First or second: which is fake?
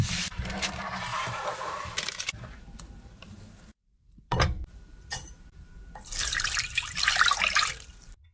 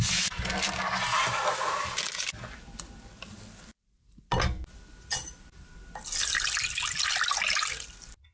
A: first